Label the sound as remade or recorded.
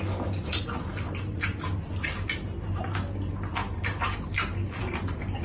recorded